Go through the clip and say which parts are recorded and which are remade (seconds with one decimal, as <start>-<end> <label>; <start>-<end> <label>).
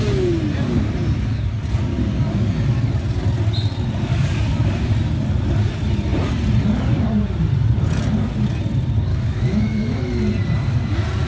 0.0-1.9 recorded; 1.9-2.5 remade; 2.5-4.1 recorded; 4.1-4.6 remade; 4.6-9.1 recorded; 9.1-10.0 remade; 10.0-11.3 recorded